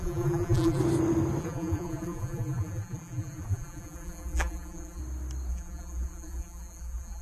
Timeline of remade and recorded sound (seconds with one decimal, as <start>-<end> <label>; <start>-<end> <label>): 0.0-0.8 remade; 0.8-1.4 recorded; 1.4-5.0 remade; 5.0-5.5 recorded; 5.5-7.2 remade